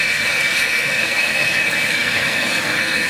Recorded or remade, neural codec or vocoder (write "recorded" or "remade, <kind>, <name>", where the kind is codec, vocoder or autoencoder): remade, codec, SNAC